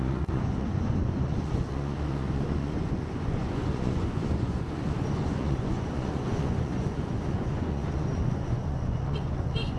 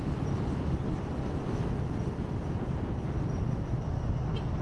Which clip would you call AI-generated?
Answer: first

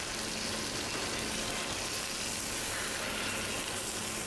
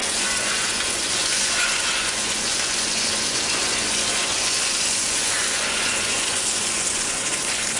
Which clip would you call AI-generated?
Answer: second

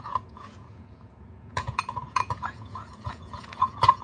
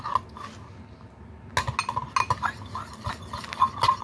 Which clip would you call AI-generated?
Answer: first